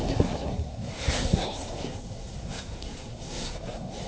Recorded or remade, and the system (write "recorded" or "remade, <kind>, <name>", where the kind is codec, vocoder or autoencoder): remade, codec, SNAC